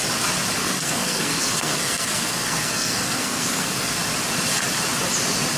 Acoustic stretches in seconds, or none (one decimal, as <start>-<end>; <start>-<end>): 0.0-0.6; 4.0-5.6